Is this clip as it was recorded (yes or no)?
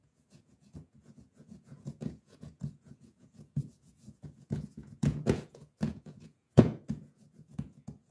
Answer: no